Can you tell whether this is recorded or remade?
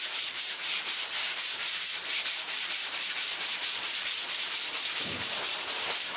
remade